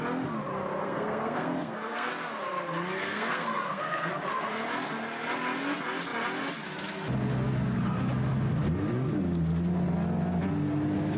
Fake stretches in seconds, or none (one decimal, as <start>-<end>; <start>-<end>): 0.8-2.1; 3.0-4.1